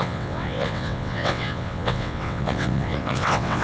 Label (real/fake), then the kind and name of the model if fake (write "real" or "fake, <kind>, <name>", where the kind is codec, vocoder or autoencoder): fake, vocoder, WaveNeXt